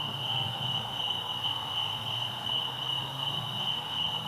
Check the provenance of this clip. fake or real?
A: fake